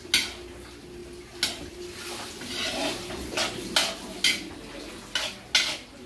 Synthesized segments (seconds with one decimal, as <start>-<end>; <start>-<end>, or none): none